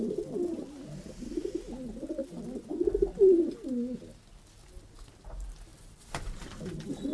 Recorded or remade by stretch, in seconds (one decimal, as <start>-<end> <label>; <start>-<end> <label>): 0.0-5.7 recorded; 5.7-6.5 remade; 6.5-7.1 recorded